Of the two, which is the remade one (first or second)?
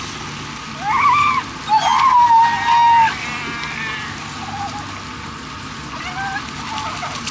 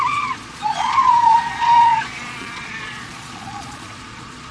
second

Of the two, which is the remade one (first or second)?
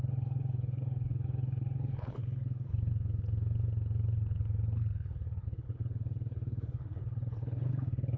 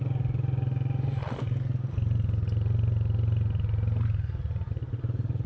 first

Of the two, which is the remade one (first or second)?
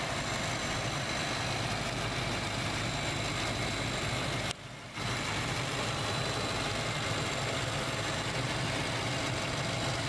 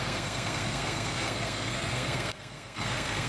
second